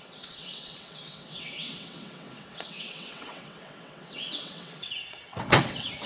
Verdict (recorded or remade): remade